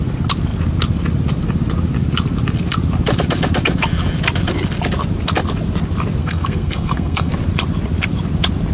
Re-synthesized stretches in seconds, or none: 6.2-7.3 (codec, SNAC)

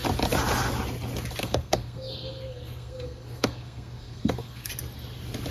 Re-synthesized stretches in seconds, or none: 1.4-4.7 (codec, SNAC)

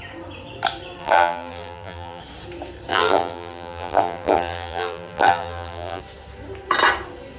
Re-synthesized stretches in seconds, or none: 1.0-2.2 (vocoder, BigVGAN v2); 2.9-6.0